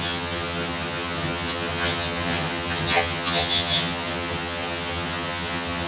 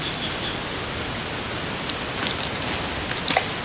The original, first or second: second